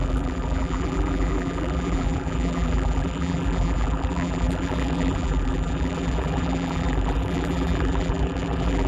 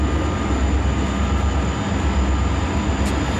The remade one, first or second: first